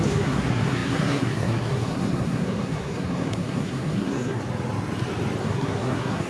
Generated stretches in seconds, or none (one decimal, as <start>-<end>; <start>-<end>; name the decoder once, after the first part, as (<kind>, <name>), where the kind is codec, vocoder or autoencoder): 0.0-4.4 (codec, SNAC); 5.4-6.3